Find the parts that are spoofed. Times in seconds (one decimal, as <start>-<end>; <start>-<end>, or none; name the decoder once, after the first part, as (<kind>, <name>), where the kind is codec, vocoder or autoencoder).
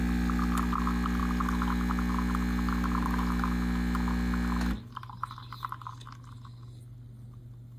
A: none